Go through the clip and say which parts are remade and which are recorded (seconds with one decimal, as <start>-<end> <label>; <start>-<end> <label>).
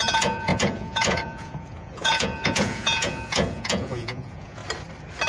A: 0.0-4.6 remade; 4.6-5.3 recorded